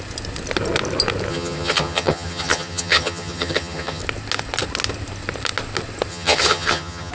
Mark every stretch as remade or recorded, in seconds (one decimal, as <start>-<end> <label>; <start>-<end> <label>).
0.0-1.3 recorded; 1.3-4.0 remade; 4.0-6.1 recorded; 6.1-7.1 remade